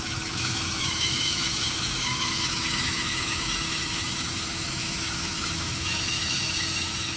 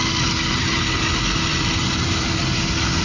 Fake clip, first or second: first